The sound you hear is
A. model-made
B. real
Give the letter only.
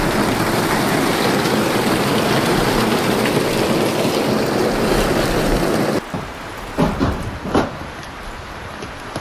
B